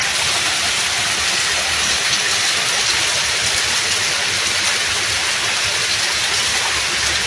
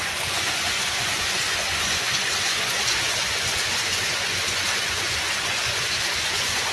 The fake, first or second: second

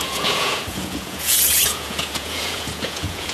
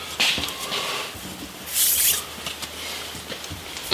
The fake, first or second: first